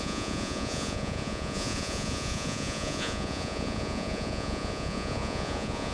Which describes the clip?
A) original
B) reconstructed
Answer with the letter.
B